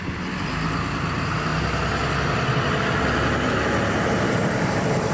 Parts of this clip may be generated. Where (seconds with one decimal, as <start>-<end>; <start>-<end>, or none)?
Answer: none